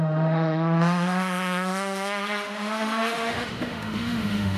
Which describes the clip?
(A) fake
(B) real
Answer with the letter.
A